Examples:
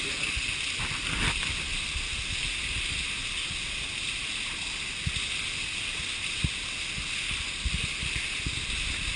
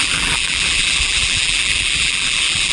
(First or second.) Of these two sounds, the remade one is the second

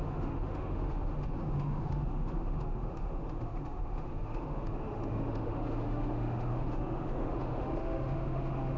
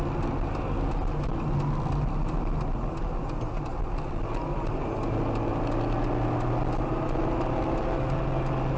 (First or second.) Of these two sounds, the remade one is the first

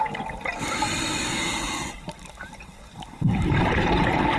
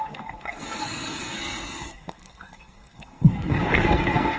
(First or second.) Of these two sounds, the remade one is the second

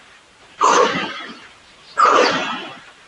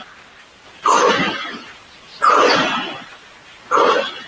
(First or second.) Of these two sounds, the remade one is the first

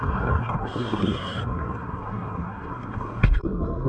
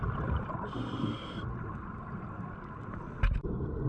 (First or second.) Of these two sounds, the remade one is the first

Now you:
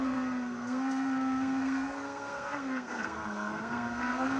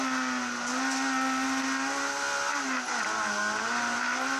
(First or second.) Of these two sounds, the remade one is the first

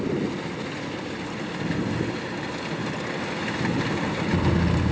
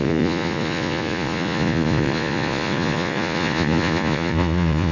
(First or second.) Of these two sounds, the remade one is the second